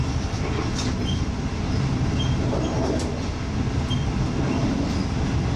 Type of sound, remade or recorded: recorded